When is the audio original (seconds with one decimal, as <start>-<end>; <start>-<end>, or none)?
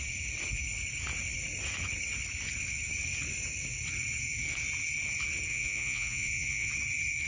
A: 0.0-5.5; 6.7-7.3